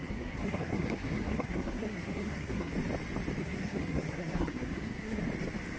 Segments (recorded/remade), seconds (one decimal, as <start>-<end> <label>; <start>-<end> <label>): 0.0-2.7 remade; 2.7-3.4 recorded; 3.4-5.2 remade; 5.2-5.8 recorded